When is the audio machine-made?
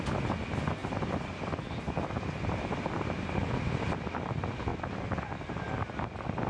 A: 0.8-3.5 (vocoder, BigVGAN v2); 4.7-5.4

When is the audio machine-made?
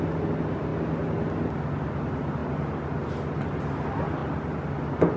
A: 4.2-4.8 (vocoder, BigVGAN v2)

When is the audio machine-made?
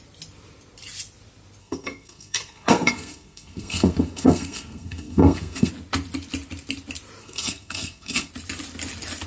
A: 1.6-5.7 (codec, SNAC); 7.2-8.3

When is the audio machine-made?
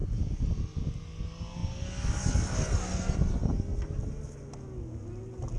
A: none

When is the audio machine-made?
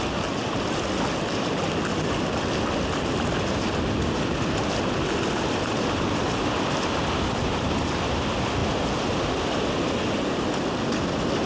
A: none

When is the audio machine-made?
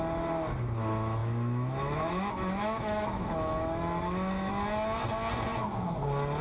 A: 1.2-4.5 (autoencoder, DAC-VAE)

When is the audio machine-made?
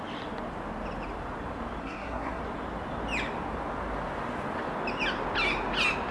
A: 1.8-2.4 (codec, SNAC)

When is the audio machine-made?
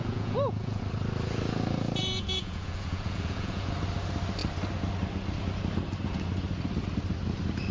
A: 0.0-0.8 (vocoder, Vocos); 2.0-3.7